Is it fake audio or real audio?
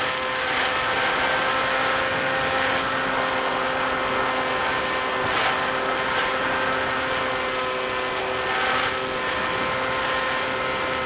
real